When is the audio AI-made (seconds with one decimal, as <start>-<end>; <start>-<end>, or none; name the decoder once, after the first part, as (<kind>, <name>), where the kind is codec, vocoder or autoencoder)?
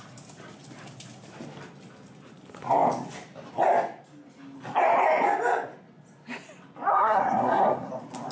6.9-7.9 (codec, SNAC)